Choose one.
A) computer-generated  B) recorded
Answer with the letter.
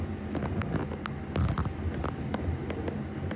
B